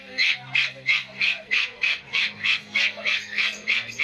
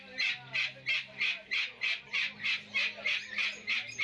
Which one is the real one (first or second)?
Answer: second